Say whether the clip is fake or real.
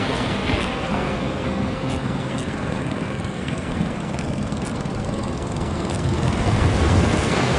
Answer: fake